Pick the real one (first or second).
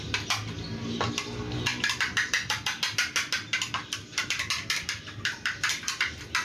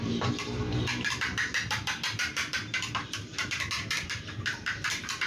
first